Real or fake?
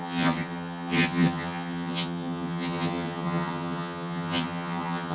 fake